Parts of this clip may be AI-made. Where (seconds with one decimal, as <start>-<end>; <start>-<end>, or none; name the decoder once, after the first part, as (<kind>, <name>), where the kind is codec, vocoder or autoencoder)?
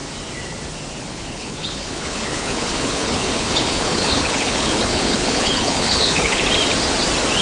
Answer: 1.0-6.4 (codec, HILCodec)